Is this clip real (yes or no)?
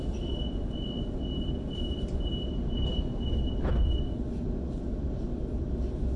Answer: yes